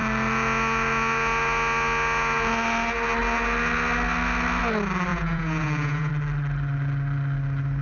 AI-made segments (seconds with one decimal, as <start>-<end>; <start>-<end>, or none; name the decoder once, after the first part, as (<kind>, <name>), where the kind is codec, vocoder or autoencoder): 5.1-6.1 (vocoder, Vocos)